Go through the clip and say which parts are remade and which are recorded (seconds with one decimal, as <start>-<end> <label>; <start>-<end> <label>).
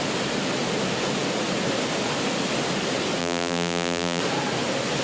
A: 0.0-3.2 recorded; 3.2-4.2 remade; 4.2-5.0 recorded